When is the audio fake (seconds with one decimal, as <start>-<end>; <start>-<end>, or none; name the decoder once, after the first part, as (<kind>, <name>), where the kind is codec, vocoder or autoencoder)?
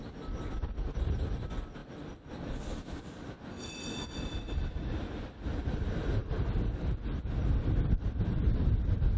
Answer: 6.2-6.7 (vocoder, BigVGAN v2)